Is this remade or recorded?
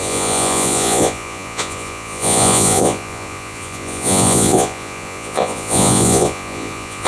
remade